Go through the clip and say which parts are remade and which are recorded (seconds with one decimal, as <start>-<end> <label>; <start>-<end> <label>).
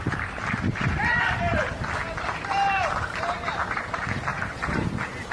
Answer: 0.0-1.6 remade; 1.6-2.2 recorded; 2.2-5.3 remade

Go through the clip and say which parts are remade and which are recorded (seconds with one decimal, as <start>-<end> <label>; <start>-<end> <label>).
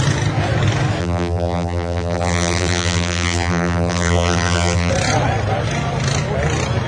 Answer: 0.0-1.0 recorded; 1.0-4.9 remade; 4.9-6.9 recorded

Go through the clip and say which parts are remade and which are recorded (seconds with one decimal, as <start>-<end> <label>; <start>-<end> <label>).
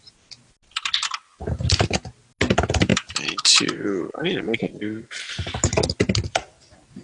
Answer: 0.0-2.9 recorded; 2.9-5.8 remade; 5.8-7.0 recorded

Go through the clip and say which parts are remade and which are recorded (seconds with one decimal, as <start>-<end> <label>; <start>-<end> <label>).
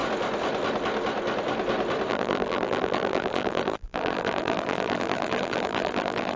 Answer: 0.0-2.1 recorded; 2.1-6.4 remade